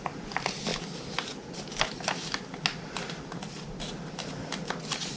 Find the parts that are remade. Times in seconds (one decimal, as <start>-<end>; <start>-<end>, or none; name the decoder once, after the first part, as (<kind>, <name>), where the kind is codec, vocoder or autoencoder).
none